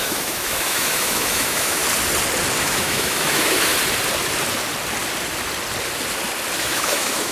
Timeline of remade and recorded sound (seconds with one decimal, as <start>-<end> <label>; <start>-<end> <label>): 0.0-1.8 remade; 1.8-2.6 recorded; 2.6-3.7 remade; 3.7-6.6 recorded; 6.6-7.3 remade